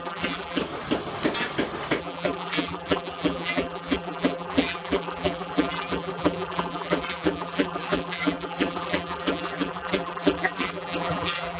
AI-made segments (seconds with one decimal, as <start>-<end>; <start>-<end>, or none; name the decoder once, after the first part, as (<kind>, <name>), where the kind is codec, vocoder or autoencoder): 0.0-0.6 (vocoder, BigVGAN v2); 2.0-11.6